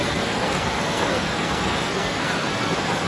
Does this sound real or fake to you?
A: fake